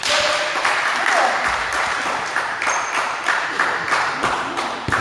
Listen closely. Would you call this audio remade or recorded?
recorded